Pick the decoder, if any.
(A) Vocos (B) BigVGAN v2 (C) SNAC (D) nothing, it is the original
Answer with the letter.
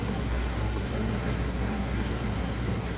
C